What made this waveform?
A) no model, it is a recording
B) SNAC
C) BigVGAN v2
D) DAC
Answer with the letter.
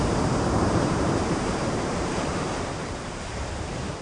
C